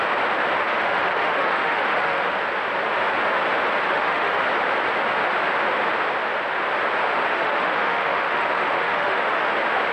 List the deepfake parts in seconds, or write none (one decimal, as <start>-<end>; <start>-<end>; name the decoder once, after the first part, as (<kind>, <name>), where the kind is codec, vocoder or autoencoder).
0.7-2.3 (autoencoder, DAC-VAE); 3.9-4.4; 7.3-9.5